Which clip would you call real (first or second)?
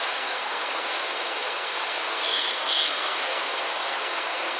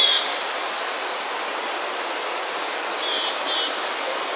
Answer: second